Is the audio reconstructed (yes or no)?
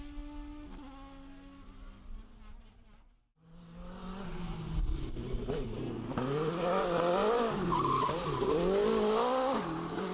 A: no